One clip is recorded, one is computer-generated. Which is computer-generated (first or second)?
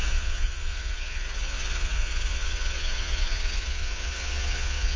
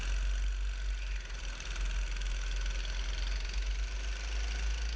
first